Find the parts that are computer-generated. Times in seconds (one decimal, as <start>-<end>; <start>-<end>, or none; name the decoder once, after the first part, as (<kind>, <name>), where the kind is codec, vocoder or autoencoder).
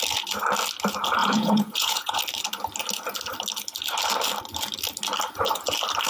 1.2-2.2 (vocoder, Vocos)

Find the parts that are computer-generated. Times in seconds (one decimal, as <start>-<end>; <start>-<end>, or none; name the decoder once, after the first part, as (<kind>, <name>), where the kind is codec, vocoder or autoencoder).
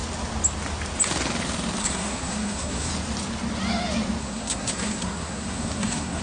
1.8-2.9 (codec, SNAC); 4.2-6.2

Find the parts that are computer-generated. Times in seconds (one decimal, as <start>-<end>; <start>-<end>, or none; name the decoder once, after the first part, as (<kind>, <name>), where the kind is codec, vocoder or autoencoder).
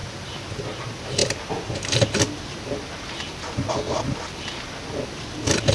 none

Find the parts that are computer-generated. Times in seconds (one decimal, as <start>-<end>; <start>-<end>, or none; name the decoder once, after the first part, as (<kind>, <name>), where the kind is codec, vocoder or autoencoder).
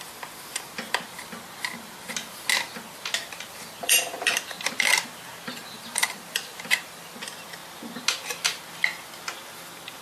3.2-4.4 (vocoder, BigVGAN v2); 5.5-7.1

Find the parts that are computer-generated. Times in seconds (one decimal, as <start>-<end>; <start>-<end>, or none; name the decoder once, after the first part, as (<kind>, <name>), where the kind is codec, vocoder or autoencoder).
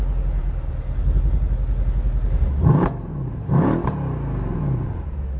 none